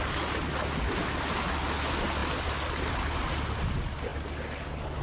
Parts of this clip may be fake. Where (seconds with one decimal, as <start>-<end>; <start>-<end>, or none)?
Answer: none